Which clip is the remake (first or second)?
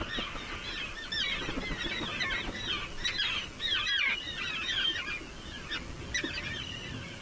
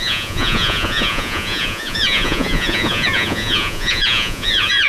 second